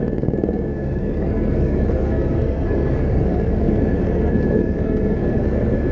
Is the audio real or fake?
fake